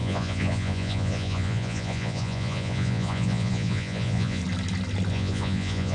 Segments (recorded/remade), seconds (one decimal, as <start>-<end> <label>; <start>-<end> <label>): 0.0-4.4 remade; 4.4-5.1 recorded; 5.1-5.9 remade